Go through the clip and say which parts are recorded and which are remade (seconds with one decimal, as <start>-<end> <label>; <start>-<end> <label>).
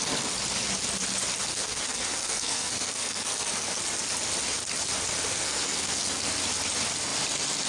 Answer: 0.0-1.5 recorded; 1.5-3.8 remade; 3.8-5.3 recorded; 5.3-6.3 remade; 6.3-7.7 recorded